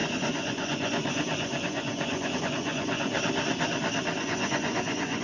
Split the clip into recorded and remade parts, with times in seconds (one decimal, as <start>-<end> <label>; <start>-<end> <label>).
0.0-3.1 remade; 3.1-4.2 recorded; 4.2-5.2 remade